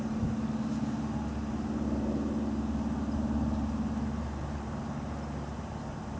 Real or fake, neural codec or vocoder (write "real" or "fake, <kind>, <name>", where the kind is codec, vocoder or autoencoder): real